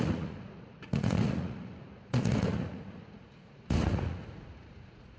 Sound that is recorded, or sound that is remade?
remade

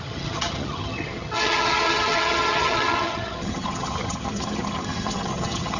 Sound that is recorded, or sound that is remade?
remade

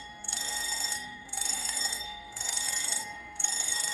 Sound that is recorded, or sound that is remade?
remade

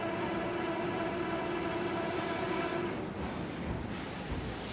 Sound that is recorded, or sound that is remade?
recorded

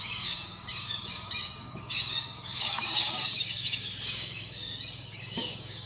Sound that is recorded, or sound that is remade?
remade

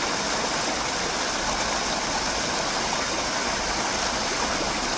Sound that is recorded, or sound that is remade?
recorded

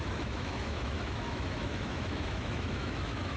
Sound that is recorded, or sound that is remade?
remade